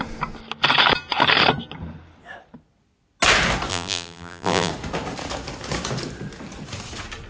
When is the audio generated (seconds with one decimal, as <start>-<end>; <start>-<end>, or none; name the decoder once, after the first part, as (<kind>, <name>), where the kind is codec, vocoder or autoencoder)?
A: 3.7-4.7 (vocoder, BigVGAN v2)